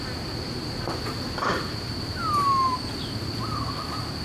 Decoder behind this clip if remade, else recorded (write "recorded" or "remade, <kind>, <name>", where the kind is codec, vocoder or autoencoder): recorded